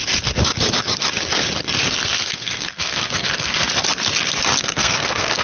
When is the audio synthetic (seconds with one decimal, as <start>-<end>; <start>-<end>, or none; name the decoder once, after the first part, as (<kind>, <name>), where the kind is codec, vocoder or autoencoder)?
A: 2.1-3.6 (codec, SNAC); 4.6-5.4